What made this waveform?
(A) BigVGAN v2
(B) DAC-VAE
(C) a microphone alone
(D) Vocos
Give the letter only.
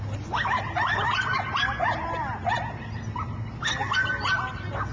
C